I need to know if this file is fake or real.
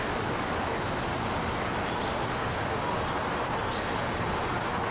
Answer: real